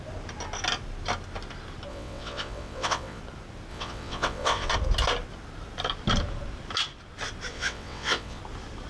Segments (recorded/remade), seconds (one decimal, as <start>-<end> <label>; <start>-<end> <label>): 0.0-1.9 recorded; 1.9-3.2 remade; 3.2-3.7 recorded; 3.7-4.7 remade; 4.7-7.5 recorded; 7.5-8.4 remade; 8.4-8.9 recorded